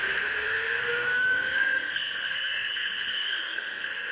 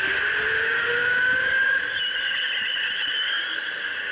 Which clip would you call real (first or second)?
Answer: second